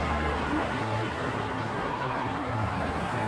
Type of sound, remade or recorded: remade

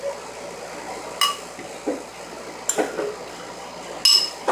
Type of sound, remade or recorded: recorded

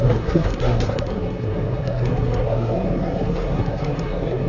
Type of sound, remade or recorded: remade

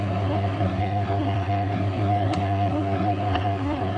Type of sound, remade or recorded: remade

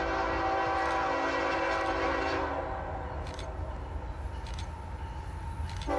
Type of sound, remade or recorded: recorded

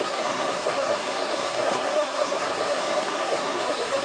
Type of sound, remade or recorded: remade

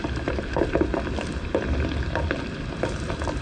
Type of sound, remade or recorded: recorded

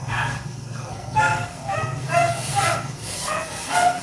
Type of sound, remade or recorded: remade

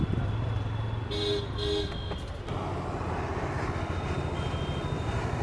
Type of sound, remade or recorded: recorded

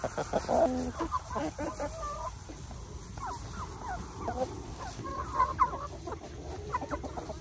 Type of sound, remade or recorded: recorded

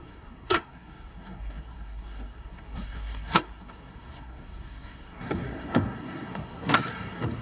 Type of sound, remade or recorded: remade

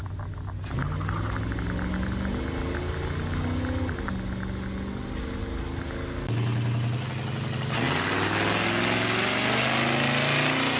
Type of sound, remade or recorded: recorded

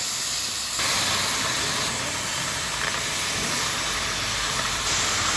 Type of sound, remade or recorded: recorded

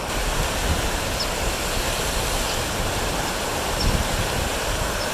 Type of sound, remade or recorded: recorded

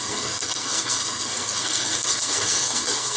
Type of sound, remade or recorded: remade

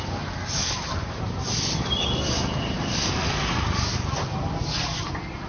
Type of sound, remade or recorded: recorded